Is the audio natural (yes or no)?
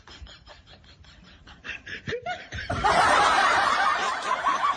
no